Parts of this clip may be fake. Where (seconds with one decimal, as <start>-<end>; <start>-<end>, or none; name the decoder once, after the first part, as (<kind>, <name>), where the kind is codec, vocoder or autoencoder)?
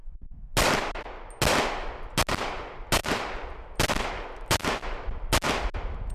none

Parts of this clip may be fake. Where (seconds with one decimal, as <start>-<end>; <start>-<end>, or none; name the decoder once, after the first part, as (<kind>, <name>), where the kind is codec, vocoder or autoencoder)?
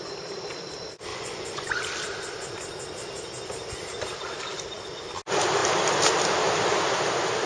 1.1-1.7 (vocoder, Vocos)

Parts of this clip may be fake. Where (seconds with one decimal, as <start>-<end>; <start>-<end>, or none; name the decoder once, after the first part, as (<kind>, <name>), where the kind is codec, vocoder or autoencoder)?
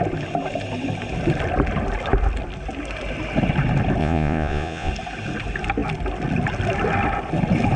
4.0-4.9 (vocoder, Vocos)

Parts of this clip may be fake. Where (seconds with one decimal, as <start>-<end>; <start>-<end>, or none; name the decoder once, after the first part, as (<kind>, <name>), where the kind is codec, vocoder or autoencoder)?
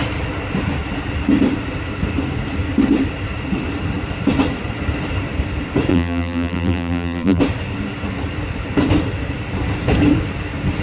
5.9-7.4 (vocoder, BigVGAN v2)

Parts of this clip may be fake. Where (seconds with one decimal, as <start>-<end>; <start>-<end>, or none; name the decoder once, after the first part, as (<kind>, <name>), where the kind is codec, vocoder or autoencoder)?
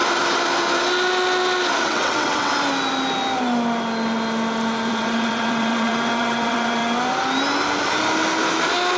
1.8-2.5 (vocoder, WaveNeXt); 4.9-6.8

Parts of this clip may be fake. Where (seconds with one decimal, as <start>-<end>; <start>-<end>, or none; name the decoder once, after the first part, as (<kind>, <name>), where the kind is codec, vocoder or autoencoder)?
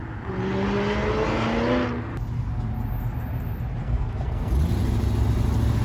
3.8-4.5 (codec, SNAC)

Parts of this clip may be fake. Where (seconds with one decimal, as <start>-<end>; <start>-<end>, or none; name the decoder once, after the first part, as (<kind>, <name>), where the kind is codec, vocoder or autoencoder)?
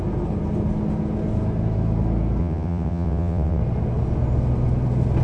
2.4-3.6 (vocoder, WaveNeXt)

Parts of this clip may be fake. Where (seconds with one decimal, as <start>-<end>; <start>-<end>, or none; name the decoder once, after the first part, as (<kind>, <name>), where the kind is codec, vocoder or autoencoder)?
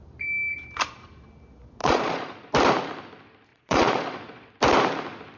1.8-2.5 (vocoder, Vocos); 3.5-4.5